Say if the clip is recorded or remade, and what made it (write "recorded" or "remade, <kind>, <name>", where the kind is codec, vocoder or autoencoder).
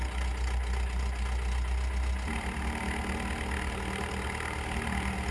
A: recorded